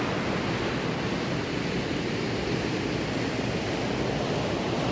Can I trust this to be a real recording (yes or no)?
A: yes